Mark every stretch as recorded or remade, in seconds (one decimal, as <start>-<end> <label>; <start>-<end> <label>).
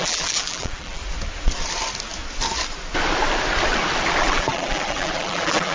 0.0-1.0 remade; 1.0-4.2 recorded; 4.2-5.7 remade